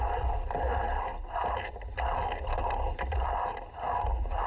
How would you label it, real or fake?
real